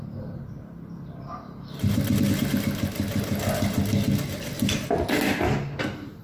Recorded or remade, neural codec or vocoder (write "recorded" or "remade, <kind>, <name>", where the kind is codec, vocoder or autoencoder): recorded